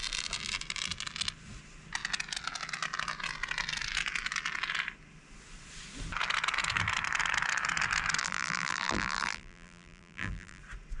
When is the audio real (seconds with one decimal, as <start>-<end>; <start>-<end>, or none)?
0.0-8.2; 10.6-11.0